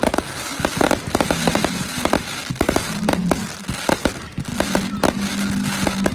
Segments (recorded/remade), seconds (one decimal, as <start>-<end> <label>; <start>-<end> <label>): 0.0-6.1 recorded